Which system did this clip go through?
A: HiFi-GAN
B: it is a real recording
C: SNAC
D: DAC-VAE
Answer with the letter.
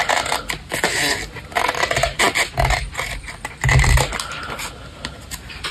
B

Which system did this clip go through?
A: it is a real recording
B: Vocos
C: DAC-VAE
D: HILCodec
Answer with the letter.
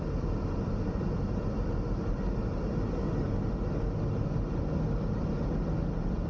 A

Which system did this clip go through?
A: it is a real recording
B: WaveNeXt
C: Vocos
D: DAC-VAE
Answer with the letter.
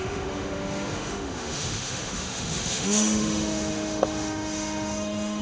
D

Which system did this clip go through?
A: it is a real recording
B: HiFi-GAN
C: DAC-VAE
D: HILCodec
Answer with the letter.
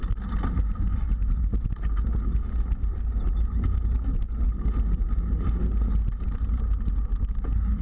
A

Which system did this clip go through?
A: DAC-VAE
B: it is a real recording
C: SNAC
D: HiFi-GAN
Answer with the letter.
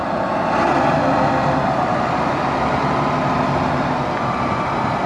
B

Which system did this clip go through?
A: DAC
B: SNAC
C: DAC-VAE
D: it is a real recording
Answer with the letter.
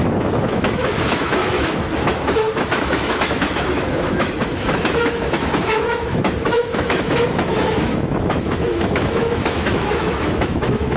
C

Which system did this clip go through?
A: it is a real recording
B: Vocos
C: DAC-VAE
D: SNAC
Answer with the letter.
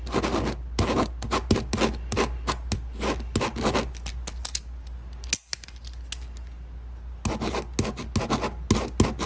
A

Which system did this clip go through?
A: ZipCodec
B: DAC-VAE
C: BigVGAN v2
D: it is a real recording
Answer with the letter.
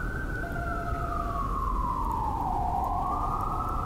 D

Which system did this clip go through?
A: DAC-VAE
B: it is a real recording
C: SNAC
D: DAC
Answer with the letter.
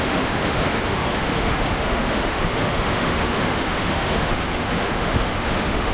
A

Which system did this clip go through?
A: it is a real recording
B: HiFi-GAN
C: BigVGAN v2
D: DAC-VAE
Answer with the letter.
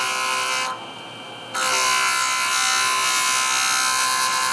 A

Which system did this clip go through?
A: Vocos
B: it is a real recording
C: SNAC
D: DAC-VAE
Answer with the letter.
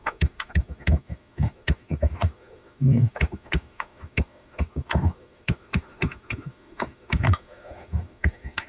D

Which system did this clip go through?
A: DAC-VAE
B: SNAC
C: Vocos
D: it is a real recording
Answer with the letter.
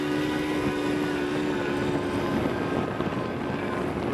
D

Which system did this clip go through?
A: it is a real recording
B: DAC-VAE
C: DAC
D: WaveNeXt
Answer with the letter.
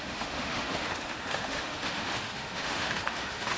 B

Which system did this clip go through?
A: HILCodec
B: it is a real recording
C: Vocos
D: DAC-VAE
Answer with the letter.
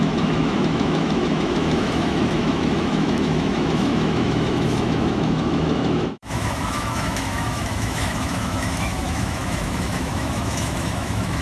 D